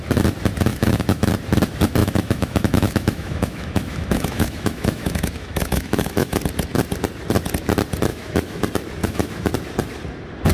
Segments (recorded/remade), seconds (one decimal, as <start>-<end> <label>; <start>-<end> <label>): 0.0-0.7 recorded; 0.7-1.3 remade; 1.3-2.0 recorded; 2.0-6.4 remade; 6.4-8.1 recorded; 8.1-8.6 remade; 8.6-9.0 recorded; 9.0-9.5 remade; 9.5-10.5 recorded